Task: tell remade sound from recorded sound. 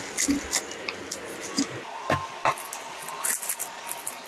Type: recorded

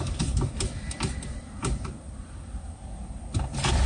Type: remade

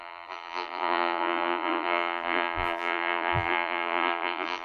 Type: remade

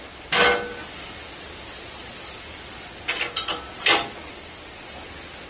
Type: recorded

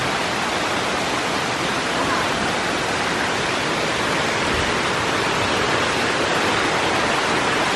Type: recorded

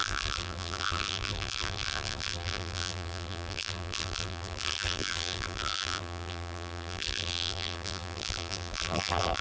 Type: remade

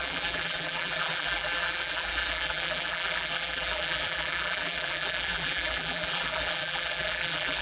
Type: remade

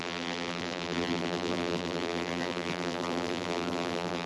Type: remade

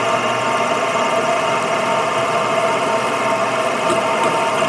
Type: recorded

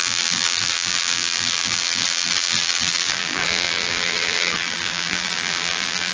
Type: remade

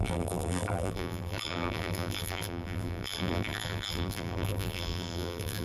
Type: remade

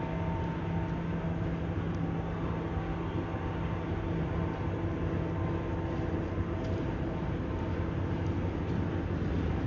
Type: recorded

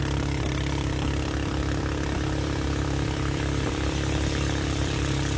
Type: remade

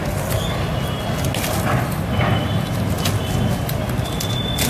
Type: recorded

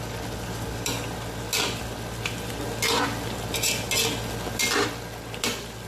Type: recorded